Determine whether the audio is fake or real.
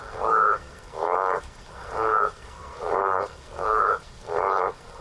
fake